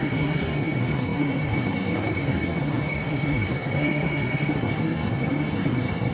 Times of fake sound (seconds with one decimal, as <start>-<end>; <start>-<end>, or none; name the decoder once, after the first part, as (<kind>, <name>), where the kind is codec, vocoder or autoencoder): 0.0-6.1 (codec, SNAC)